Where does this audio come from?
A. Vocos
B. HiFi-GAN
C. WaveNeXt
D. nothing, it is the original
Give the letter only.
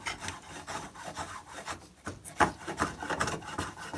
D